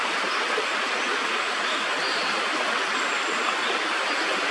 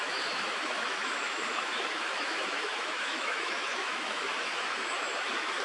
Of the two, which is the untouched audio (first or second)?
first